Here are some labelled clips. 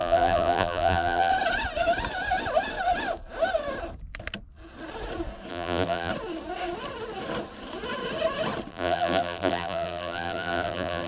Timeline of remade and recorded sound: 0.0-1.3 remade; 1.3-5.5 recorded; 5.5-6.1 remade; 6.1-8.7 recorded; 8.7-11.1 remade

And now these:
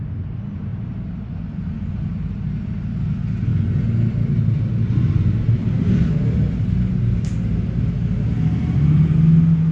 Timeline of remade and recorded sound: 0.0-0.7 recorded; 0.7-2.3 remade; 2.3-3.5 recorded; 3.5-4.6 remade; 4.6-5.6 recorded; 5.6-6.1 remade; 6.1-9.7 recorded

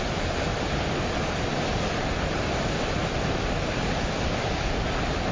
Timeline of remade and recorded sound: 0.0-5.3 recorded

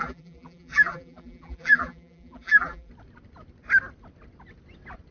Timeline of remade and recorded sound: 0.0-2.9 remade; 2.9-5.1 recorded

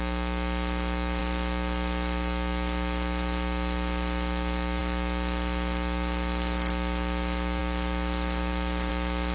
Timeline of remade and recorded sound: 0.0-7.6 recorded; 7.6-8.9 remade; 8.9-9.3 recorded

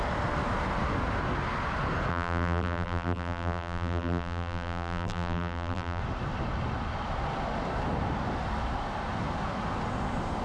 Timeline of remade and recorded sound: 0.0-2.1 recorded; 2.1-6.0 remade; 6.0-10.4 recorded